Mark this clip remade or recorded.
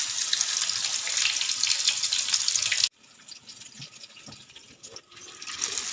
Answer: recorded